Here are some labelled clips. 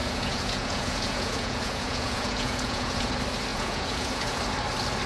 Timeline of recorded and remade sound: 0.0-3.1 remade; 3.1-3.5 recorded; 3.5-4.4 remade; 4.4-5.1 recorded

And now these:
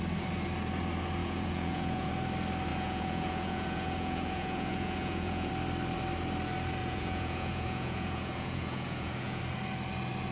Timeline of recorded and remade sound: 0.0-1.2 recorded; 1.2-2.1 remade; 2.1-2.7 recorded; 2.7-5.5 remade; 5.5-6.8 recorded; 6.8-9.4 remade; 9.4-10.3 recorded

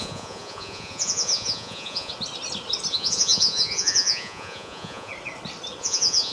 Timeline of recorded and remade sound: 0.0-2.1 remade; 2.1-2.9 recorded; 2.9-5.1 remade; 5.1-5.8 recorded; 5.8-6.3 remade

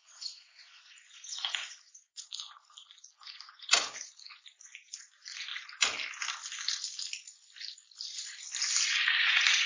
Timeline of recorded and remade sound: 0.0-5.5 remade; 5.5-9.2 recorded; 9.2-9.7 remade